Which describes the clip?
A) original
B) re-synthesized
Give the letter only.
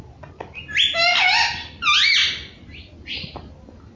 A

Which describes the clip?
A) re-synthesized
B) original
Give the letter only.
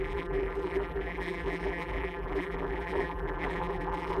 A